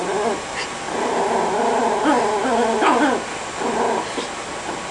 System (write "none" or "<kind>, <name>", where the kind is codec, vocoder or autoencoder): none